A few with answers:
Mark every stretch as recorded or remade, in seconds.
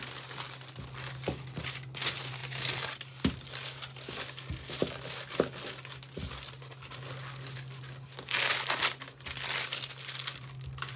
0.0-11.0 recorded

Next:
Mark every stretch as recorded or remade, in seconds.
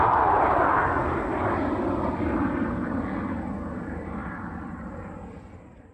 0.0-5.9 recorded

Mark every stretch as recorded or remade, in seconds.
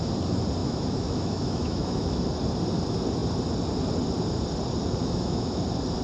0.0-0.6 recorded; 0.6-2.2 remade; 2.2-5.0 recorded; 5.0-5.6 remade; 5.6-6.0 recorded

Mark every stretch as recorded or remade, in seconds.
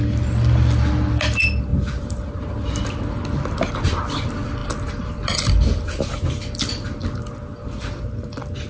0.0-1.7 recorded; 1.7-2.8 remade; 2.8-4.6 recorded; 4.6-6.0 remade; 6.0-8.7 recorded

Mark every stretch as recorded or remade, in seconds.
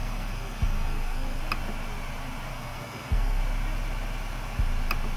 0.0-1.4 remade; 1.4-2.5 recorded; 2.5-3.4 remade; 3.4-5.2 recorded